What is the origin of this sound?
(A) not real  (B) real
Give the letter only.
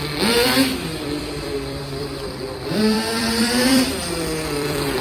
A